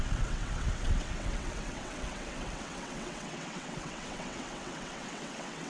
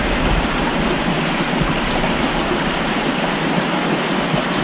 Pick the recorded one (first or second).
second